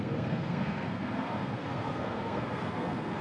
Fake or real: fake